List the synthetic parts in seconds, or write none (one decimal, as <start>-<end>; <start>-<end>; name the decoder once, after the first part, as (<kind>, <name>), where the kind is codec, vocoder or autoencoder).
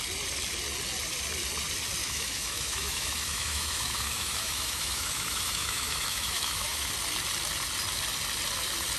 2.0-6.9 (autoencoder, DAC-VAE)